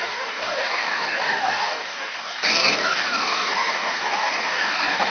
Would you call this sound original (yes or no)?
no